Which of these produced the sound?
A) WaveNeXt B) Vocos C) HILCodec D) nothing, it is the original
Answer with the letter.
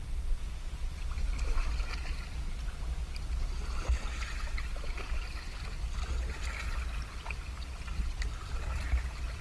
D